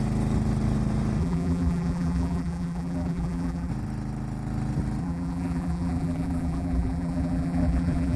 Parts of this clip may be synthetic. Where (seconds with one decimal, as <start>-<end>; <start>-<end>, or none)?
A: 1.2-3.7; 5.0-8.2